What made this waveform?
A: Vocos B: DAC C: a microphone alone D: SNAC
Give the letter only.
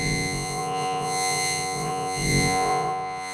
A